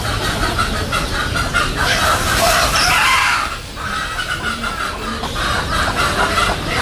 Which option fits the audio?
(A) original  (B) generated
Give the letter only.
A